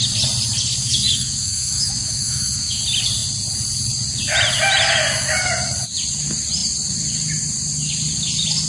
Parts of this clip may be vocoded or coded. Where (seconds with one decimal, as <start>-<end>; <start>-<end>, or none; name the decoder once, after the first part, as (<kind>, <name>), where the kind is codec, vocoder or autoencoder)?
0.8-2.8 (autoencoder, DAC-VAE)